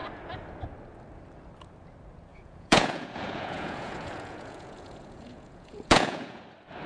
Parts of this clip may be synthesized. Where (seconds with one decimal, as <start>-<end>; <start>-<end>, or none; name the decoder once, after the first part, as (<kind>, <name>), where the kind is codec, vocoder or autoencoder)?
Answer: 2.3-6.4 (vocoder, Vocos)